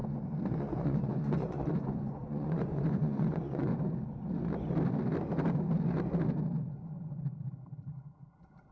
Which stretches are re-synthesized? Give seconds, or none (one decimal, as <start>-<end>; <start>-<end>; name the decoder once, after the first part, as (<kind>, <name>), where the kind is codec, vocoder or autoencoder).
0.6-3.7 (vocoder, Vocos)

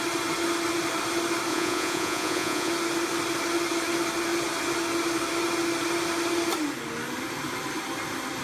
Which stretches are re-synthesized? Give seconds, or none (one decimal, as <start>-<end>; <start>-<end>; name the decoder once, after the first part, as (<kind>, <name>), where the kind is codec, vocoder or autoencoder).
1.5-2.7 (vocoder, Vocos)

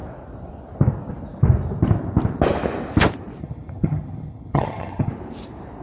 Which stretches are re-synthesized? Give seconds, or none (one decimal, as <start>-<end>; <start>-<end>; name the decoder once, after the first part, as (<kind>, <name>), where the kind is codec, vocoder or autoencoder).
3.4-5.1 (vocoder, HiFi-GAN)

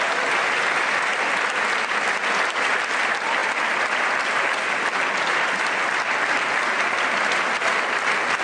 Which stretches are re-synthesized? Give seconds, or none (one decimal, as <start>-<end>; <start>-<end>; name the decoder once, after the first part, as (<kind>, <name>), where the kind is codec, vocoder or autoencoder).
none

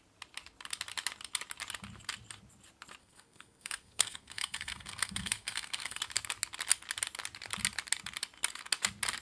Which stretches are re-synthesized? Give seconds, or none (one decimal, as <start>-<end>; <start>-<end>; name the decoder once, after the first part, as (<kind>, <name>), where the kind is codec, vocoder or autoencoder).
3.0-6.0 (codec, SNAC)

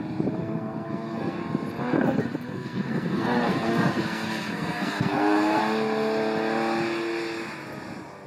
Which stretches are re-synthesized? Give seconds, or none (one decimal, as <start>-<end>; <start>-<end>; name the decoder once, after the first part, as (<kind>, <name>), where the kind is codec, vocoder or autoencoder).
0.4-1.4 (codec, SNAC); 1.9-5.6